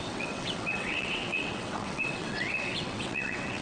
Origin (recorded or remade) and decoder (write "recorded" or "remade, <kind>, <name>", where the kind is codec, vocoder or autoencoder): remade, vocoder, WaveNeXt